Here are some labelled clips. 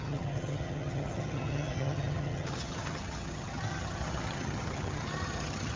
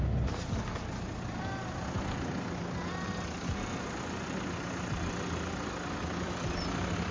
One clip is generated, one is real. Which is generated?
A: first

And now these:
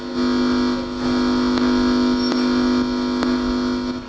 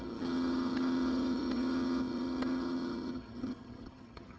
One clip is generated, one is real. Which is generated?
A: second